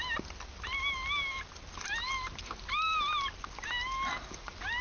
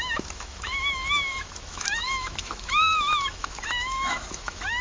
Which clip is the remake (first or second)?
second